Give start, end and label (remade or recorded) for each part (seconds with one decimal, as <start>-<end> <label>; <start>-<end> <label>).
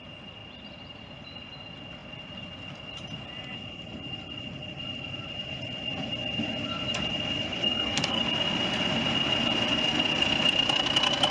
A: 0.0-7.6 recorded; 7.6-8.2 remade; 8.2-11.3 recorded